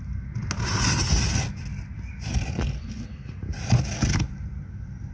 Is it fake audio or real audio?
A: real